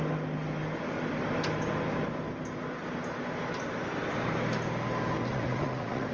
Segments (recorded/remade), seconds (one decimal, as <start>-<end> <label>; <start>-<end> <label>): 0.0-5.3 recorded; 5.3-6.1 remade